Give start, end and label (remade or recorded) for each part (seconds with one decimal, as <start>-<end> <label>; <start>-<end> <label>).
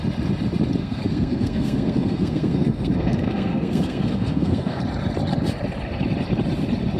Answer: 0.0-0.8 recorded; 0.8-4.8 remade; 4.8-7.0 recorded